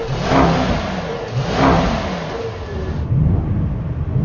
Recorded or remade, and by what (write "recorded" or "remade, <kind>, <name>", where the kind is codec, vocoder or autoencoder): recorded